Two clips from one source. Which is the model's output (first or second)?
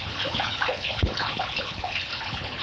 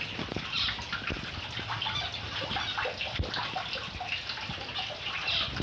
first